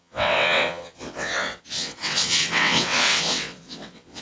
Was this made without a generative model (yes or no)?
no